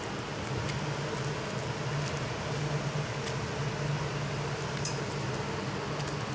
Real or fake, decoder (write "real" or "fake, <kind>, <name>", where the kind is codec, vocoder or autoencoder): real